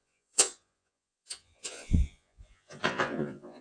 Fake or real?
fake